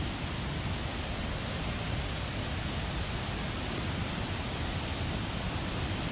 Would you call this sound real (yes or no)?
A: yes